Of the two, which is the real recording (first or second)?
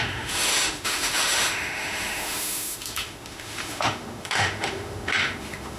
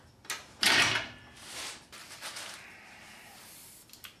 second